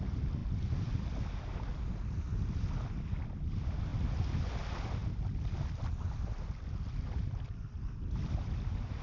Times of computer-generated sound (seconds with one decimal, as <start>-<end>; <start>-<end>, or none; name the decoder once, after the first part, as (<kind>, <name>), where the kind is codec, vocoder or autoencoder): none